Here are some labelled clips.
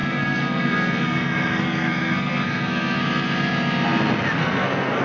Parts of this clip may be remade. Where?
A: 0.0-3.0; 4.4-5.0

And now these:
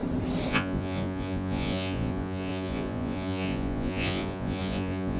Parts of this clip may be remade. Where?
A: 0.5-5.2

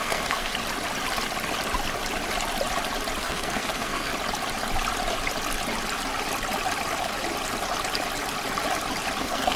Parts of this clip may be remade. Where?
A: 0.0-0.5; 3.2-4.1; 9.2-9.6